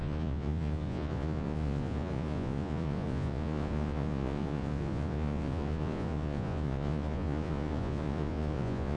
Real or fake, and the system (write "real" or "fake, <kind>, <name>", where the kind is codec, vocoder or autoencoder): fake, vocoder, Vocos